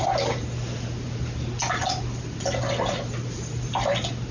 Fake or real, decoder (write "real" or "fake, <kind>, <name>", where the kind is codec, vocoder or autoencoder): real